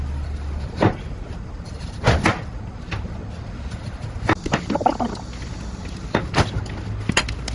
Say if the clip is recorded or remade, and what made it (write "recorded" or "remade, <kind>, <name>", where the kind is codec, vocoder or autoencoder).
recorded